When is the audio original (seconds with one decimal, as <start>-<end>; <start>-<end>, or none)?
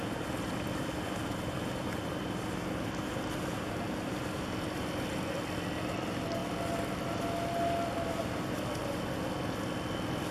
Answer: 0.0-10.3